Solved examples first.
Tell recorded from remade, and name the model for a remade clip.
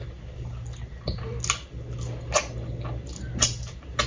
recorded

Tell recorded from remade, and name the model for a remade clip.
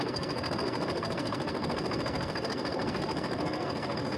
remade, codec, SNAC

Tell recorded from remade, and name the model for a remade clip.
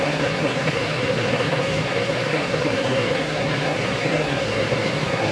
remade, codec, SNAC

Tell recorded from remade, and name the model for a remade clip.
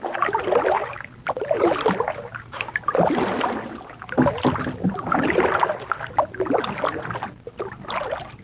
recorded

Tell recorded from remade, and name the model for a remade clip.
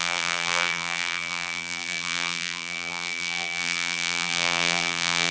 remade, vocoder, BigVGAN v2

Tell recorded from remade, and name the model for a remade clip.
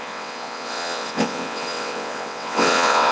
remade, vocoder, WaveNeXt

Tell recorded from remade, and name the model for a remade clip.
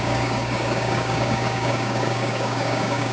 remade, codec, DAC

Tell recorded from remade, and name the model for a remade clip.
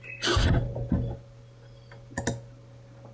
recorded